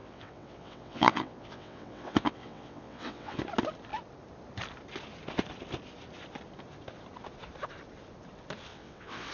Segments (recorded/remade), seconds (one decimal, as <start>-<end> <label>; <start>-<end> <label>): 0.0-3.4 remade; 3.4-8.7 recorded; 8.7-9.3 remade